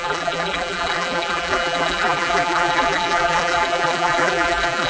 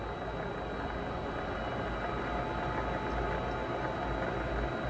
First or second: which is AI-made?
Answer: first